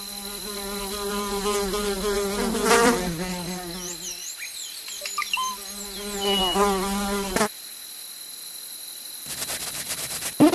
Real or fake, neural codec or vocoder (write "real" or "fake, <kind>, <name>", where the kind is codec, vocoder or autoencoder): real